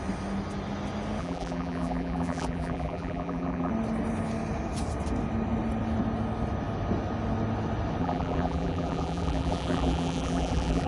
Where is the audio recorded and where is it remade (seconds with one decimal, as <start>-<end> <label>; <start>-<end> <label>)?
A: 0.0-1.2 recorded; 1.2-3.7 remade; 3.7-8.0 recorded; 8.0-10.9 remade